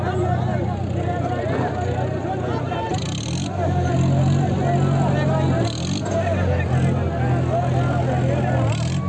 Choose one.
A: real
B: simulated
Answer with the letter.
A